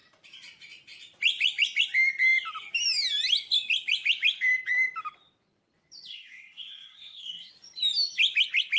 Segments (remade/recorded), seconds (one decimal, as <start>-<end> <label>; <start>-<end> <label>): 0.0-6.1 recorded; 6.1-7.5 remade; 7.5-8.8 recorded